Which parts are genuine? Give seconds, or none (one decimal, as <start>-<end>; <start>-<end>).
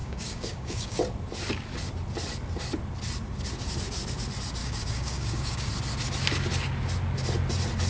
1.0-4.6; 5.7-7.9